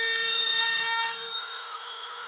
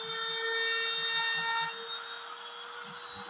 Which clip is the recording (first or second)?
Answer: second